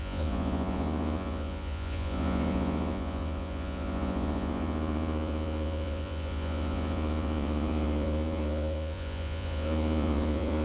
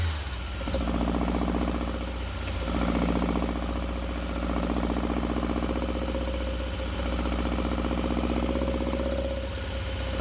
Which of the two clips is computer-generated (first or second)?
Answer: first